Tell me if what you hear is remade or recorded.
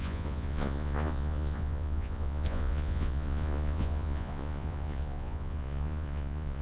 remade